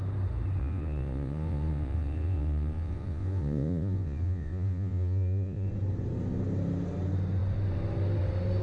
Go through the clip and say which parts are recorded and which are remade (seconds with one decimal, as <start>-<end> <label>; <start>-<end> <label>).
0.0-0.6 recorded; 0.6-5.7 remade; 5.7-8.6 recorded